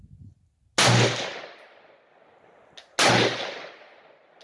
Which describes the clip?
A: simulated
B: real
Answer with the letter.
B